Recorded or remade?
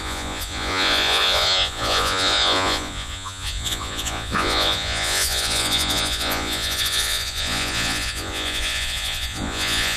remade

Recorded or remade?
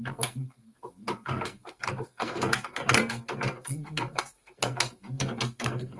remade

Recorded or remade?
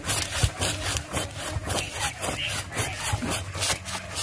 recorded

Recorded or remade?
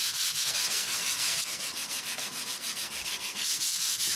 remade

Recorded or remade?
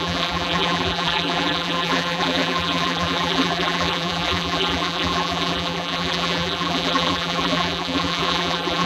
remade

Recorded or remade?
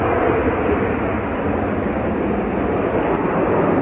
recorded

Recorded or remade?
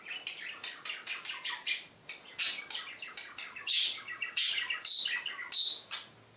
recorded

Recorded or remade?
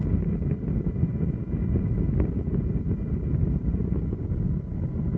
recorded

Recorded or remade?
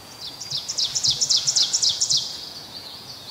remade